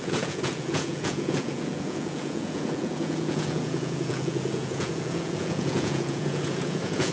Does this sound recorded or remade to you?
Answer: remade